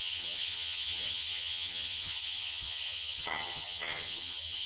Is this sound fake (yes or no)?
yes